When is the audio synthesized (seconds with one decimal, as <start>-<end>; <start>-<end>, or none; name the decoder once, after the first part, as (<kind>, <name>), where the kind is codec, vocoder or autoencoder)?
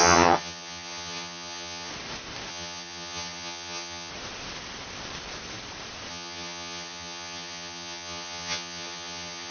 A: 0.0-1.9 (vocoder, HiFi-GAN); 2.5-4.1; 6.1-9.5